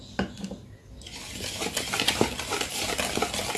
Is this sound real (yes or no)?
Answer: yes